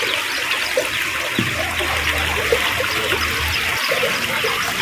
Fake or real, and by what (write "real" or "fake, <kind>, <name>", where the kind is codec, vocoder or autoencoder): real